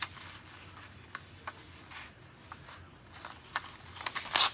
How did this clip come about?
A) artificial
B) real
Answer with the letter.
B